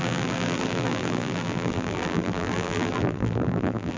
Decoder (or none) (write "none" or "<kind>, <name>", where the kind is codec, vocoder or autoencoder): vocoder, BigVGAN v2